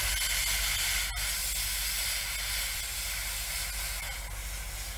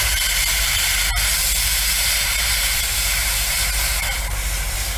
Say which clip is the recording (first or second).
first